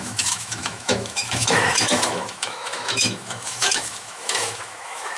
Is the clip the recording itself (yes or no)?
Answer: no